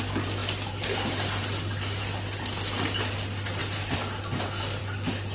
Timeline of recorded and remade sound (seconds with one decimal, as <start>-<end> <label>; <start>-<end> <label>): 0.0-5.3 recorded